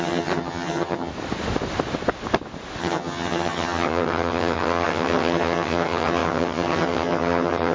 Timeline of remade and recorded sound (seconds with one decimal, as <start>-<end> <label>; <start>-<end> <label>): 0.0-1.1 remade; 1.1-2.8 recorded; 2.8-7.7 remade